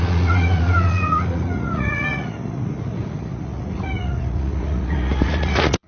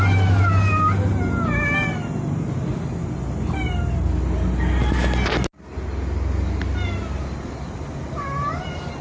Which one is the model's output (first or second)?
first